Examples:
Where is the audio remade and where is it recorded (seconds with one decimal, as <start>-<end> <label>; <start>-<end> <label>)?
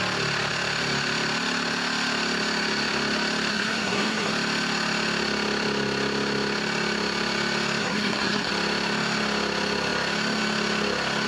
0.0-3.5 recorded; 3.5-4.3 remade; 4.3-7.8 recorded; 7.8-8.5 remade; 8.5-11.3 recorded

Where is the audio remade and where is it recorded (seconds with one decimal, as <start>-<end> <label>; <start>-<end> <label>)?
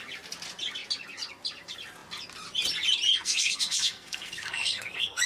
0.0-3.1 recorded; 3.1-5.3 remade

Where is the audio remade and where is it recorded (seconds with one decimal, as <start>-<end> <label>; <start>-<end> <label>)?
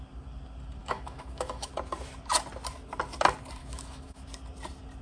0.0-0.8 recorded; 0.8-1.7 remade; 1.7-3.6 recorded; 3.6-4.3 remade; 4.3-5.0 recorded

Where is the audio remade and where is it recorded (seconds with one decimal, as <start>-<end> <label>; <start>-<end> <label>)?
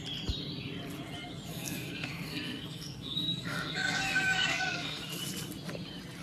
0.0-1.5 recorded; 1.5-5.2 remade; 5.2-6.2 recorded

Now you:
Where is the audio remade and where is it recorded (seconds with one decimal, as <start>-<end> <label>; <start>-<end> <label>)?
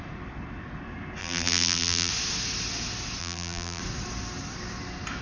0.0-1.2 recorded; 1.2-2.1 remade; 2.1-3.2 recorded; 3.2-3.8 remade; 3.8-5.2 recorded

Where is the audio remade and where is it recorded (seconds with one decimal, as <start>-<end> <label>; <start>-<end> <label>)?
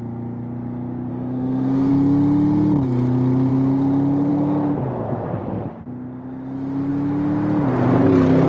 0.0-1.1 recorded; 1.1-1.9 remade; 1.9-8.5 recorded